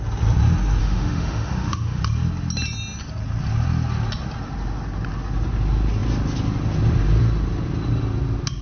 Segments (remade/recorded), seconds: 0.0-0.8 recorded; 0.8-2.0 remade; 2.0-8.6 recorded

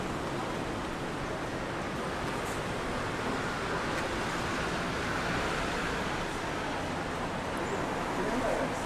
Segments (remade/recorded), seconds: 0.0-8.9 recorded

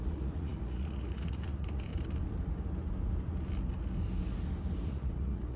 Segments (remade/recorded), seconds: 0.0-1.9 remade; 1.9-4.9 recorded; 4.9-5.6 remade

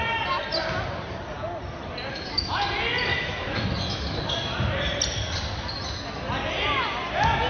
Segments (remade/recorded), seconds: 0.0-2.1 recorded; 2.1-2.7 remade; 2.7-3.1 recorded; 3.1-4.2 remade; 4.2-7.5 recorded

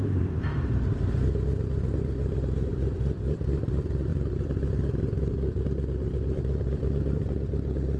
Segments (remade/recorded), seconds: 0.0-8.0 remade

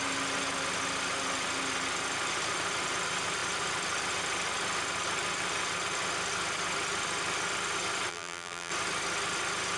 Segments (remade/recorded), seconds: 0.0-8.1 recorded; 8.1-8.7 remade; 8.7-9.8 recorded

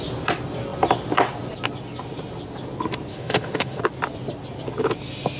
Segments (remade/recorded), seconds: 0.0-3.1 recorded; 3.1-3.8 remade; 3.8-5.4 recorded